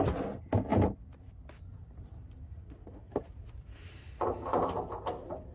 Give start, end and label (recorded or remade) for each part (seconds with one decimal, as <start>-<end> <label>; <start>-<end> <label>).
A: 0.0-5.5 recorded